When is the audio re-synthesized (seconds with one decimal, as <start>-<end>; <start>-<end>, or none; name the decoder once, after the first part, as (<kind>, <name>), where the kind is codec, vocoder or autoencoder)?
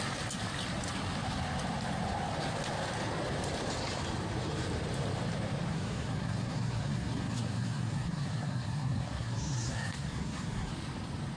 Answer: 5.7-10.7 (codec, SNAC)